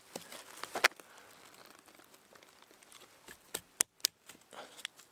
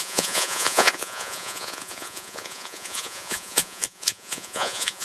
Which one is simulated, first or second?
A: second